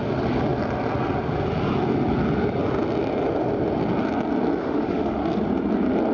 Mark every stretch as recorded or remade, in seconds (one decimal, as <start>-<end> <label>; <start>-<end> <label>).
0.0-4.6 recorded; 4.6-5.2 remade; 5.2-6.1 recorded